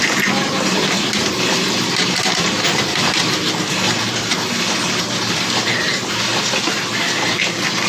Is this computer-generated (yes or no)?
no